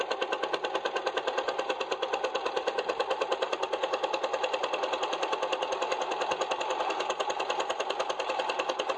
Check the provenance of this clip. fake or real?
real